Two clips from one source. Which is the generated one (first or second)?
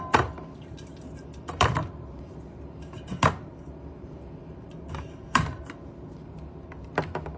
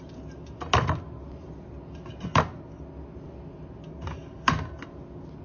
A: first